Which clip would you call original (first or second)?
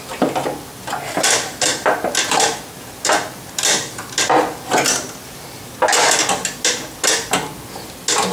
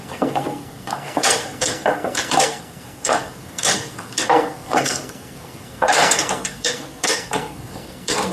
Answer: first